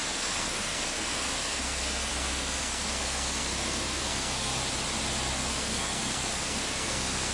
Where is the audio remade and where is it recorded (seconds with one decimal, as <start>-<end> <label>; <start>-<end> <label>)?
0.0-4.5 remade; 4.5-5.3 recorded; 5.3-7.3 remade

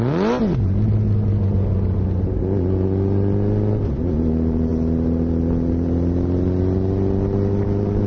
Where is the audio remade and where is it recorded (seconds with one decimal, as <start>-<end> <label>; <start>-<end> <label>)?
0.0-8.1 recorded

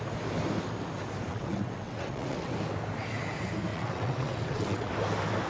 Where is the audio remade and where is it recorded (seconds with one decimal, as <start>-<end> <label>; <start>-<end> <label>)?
0.0-1.3 recorded; 1.3-2.5 remade; 2.5-3.7 recorded; 3.7-4.9 remade; 4.9-5.5 recorded

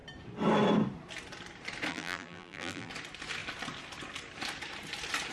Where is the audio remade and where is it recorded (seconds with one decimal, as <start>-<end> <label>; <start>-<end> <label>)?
0.0-1.9 recorded; 1.9-2.9 remade; 2.9-5.3 recorded

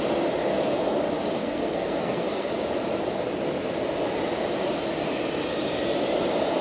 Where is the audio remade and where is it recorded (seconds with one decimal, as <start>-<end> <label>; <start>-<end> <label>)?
0.0-1.4 recorded; 1.4-2.5 remade; 2.5-6.6 recorded

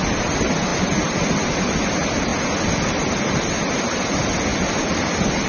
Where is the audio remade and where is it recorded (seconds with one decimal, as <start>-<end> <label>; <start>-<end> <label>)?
0.0-5.5 recorded

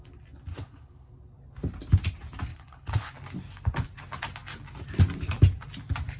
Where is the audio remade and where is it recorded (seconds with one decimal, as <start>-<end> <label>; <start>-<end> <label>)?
0.0-0.5 recorded; 0.5-1.1 remade; 1.1-2.5 recorded; 2.5-3.1 remade; 3.1-6.2 recorded